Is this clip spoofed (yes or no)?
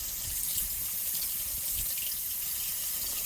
no